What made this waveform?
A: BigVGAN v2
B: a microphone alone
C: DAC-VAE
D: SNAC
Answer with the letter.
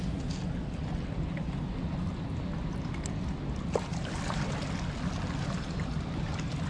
B